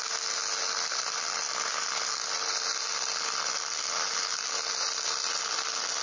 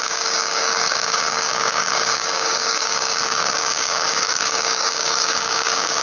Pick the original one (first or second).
first